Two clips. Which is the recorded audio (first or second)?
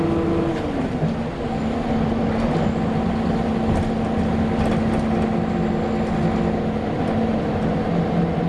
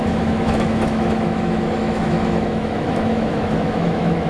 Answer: first